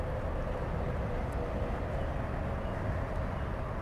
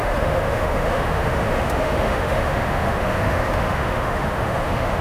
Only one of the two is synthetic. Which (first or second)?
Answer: second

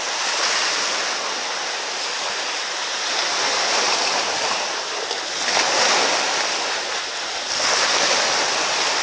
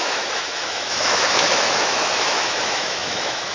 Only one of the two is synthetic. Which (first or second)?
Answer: second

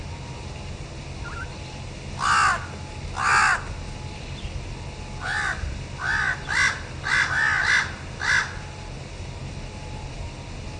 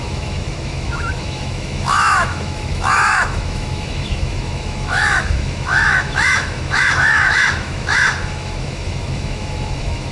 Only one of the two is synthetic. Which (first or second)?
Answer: second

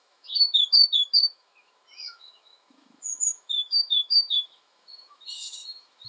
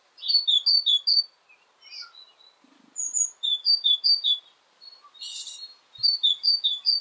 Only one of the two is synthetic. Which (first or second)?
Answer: first